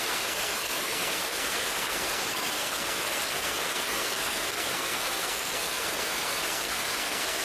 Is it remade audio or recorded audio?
remade